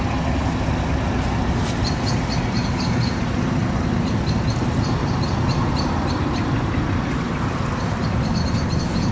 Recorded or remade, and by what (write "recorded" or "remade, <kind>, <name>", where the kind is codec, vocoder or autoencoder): recorded